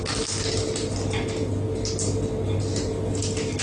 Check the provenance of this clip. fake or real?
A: real